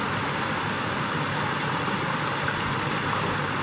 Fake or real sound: fake